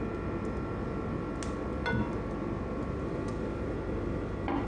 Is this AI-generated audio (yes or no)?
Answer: no